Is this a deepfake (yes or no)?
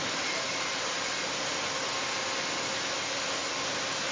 no